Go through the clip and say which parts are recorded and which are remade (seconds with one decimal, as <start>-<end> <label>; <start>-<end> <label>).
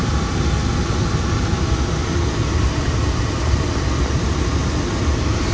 0.0-5.5 recorded